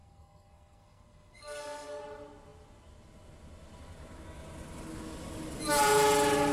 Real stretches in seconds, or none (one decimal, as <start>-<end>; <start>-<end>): 2.0-6.5